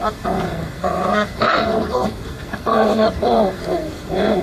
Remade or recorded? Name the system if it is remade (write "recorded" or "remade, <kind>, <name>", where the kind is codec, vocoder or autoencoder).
remade, codec, SNAC